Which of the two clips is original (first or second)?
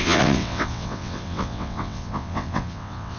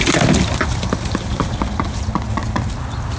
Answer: second